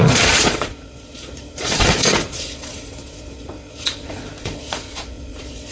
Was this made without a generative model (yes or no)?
no